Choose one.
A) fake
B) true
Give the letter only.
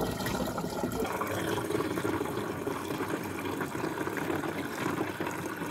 B